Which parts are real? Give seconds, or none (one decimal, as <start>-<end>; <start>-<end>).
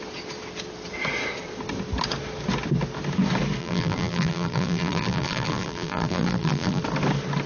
0.0-3.6; 6.8-7.5